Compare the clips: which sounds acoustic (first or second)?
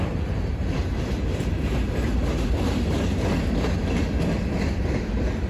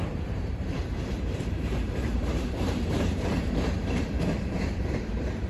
first